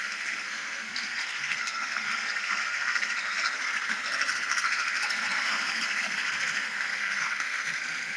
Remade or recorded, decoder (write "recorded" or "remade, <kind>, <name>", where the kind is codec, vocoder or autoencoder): remade, codec, SNAC